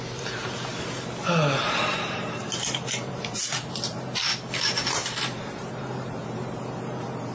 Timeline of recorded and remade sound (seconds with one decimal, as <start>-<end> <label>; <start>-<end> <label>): 0.0-0.7 remade; 0.7-1.6 recorded; 1.6-4.3 remade; 4.3-4.9 recorded; 4.9-7.3 remade